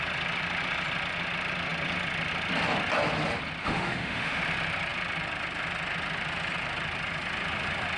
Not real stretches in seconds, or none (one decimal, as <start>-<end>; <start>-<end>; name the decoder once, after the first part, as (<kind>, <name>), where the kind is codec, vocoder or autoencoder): 3.6-4.4 (autoencoder, DAC-VAE)